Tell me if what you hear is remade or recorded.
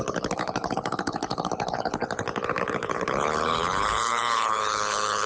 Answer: remade